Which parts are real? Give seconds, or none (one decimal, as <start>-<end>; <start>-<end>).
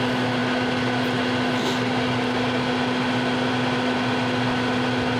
0.0-5.2